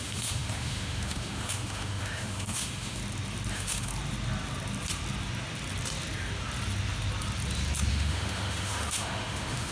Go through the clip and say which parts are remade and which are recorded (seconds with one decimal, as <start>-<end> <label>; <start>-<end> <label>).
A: 0.0-3.0 remade; 3.0-3.5 recorded; 3.5-3.9 remade; 3.9-7.9 recorded; 7.9-9.7 remade